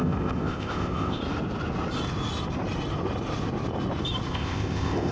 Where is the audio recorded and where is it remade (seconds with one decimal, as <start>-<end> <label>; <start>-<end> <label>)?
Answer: 0.0-1.2 remade; 1.2-4.3 recorded; 4.3-5.1 remade